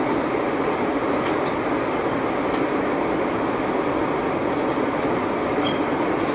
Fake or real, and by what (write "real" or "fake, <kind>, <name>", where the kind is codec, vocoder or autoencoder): real